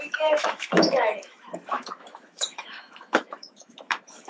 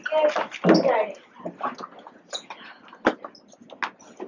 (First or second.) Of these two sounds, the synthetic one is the first